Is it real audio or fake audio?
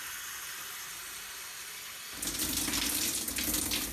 real